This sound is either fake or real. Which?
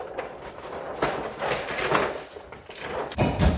real